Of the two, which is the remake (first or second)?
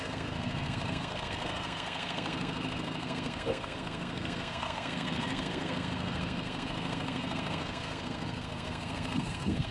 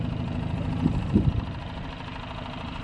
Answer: first